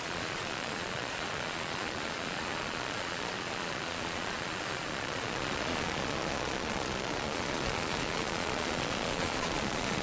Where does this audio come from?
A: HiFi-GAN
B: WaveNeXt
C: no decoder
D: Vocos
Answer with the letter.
D